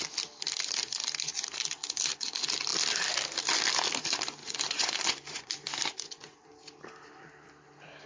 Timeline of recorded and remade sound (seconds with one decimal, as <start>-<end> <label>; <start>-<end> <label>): 0.0-4.4 recorded; 4.4-5.5 remade; 5.5-5.9 recorded; 5.9-6.4 remade; 6.4-8.1 recorded